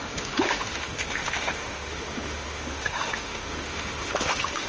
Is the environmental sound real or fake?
fake